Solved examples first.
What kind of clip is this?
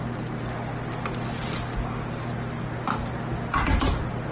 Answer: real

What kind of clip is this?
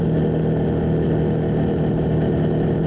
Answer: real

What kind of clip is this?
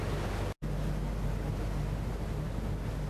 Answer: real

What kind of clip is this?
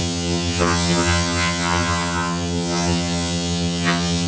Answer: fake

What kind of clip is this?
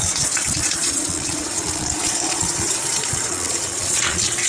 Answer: fake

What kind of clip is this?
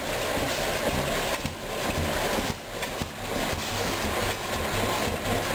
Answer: real